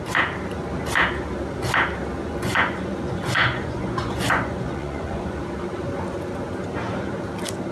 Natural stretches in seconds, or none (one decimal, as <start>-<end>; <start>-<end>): 0.0-2.2; 5.4-7.7